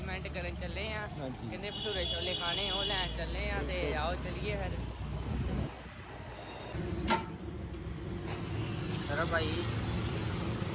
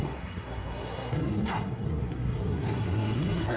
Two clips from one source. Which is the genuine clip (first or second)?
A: first